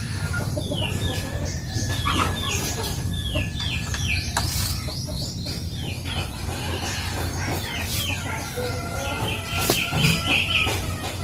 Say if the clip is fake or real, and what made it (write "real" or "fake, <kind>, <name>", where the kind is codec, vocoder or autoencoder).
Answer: real